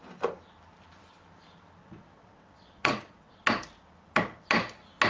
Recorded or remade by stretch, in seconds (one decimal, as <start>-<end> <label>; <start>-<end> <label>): 0.0-1.8 recorded; 1.8-3.3 remade; 3.3-5.1 recorded